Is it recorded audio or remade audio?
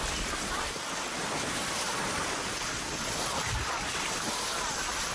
recorded